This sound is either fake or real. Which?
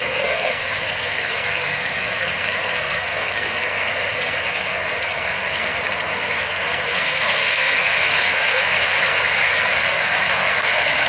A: fake